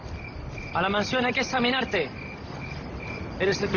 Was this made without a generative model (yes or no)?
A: yes